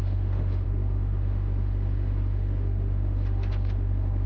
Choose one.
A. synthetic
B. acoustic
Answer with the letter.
A